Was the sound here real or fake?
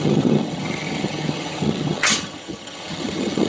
fake